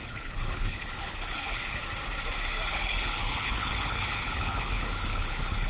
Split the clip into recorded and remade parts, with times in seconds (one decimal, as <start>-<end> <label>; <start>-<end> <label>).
0.0-1.7 remade; 1.7-2.7 recorded; 2.7-5.7 remade